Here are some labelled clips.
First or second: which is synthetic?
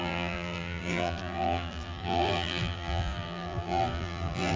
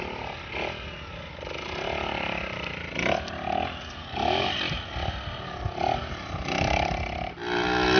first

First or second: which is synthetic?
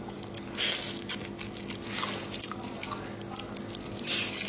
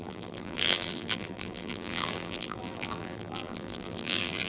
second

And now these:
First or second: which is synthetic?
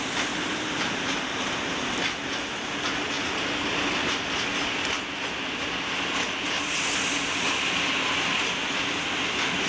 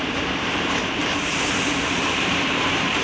second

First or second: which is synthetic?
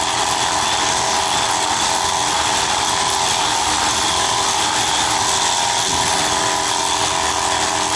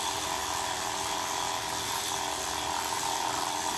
second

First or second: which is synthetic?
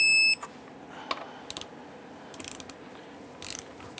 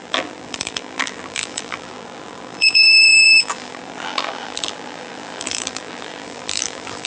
second